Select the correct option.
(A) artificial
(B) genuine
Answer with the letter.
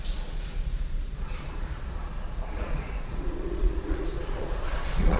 A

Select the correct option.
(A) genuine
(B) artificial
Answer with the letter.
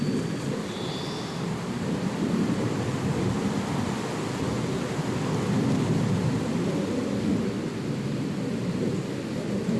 A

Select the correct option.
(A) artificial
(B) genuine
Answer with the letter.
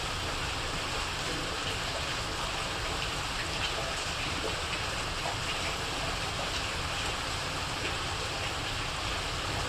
B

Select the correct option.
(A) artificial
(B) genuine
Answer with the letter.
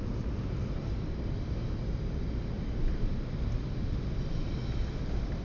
B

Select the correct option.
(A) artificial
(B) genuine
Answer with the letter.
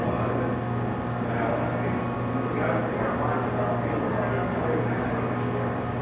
B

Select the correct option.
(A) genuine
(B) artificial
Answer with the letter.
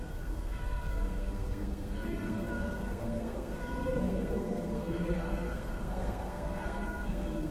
B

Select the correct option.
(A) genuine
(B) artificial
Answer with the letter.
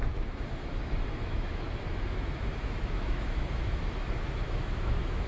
B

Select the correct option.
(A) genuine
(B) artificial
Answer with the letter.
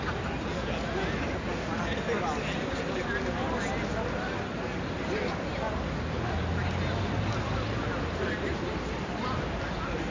A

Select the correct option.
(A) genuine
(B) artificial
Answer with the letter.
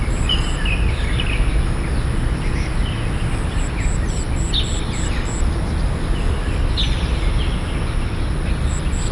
A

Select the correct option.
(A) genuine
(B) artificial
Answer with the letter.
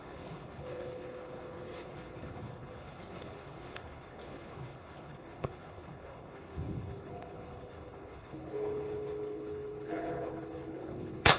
B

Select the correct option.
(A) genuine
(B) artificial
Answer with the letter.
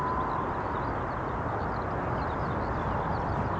A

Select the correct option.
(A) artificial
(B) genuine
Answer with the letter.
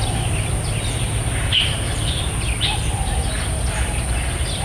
B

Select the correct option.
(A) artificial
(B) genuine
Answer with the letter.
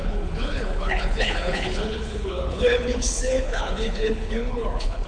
A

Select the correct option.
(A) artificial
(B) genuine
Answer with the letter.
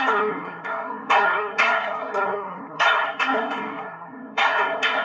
A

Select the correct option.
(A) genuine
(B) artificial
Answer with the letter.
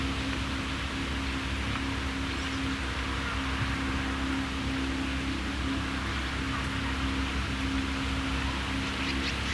A